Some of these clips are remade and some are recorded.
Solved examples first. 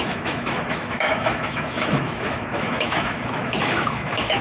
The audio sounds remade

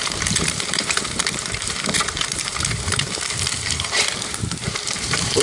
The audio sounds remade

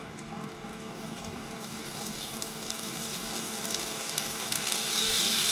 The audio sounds remade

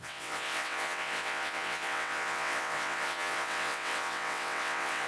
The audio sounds remade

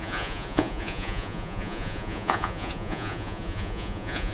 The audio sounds remade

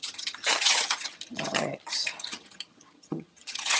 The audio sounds remade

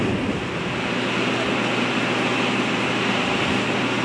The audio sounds recorded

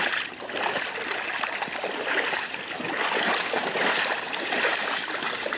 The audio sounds recorded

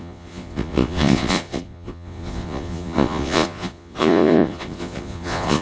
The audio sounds remade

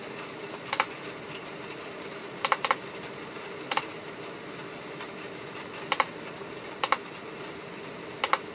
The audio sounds remade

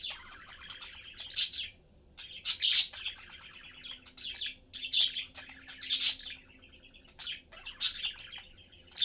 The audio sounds recorded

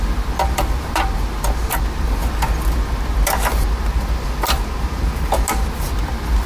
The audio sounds recorded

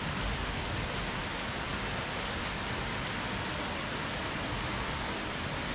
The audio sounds recorded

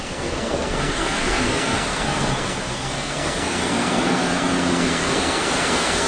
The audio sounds remade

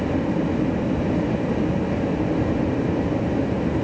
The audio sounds recorded